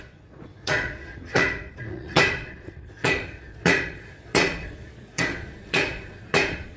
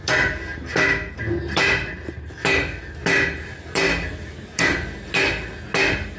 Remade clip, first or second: first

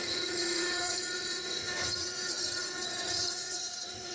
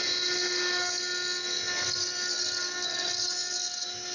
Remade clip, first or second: first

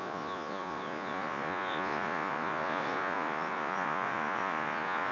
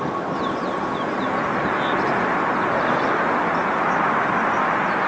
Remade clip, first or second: first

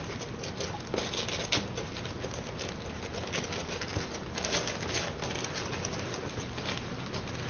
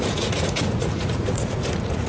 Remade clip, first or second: second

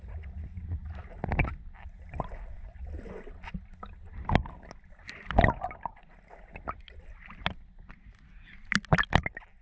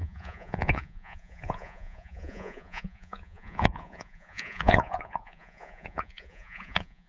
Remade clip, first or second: second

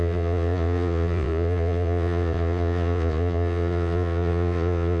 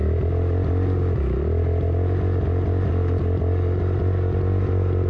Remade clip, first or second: first